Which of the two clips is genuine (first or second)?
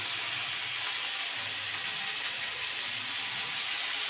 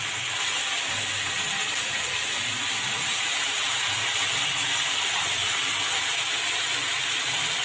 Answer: first